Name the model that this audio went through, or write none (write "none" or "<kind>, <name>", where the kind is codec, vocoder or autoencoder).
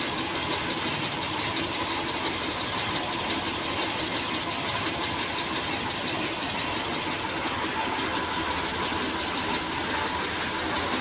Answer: none